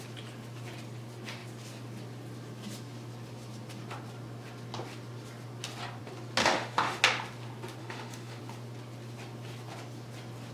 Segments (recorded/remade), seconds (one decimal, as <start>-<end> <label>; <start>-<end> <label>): 0.0-6.4 recorded; 6.4-7.0 remade; 7.0-7.8 recorded; 7.8-8.4 remade; 8.4-10.5 recorded